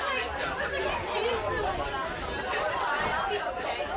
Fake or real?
real